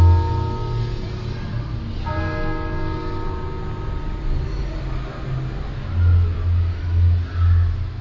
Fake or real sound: real